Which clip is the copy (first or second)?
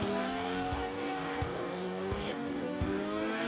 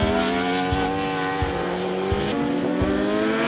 first